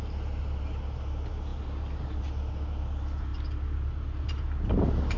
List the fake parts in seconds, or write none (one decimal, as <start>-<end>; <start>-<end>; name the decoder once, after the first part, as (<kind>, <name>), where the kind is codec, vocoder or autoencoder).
none